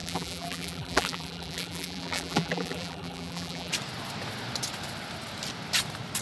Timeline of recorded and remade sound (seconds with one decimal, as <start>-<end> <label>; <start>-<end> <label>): 0.0-3.7 remade; 3.7-6.2 recorded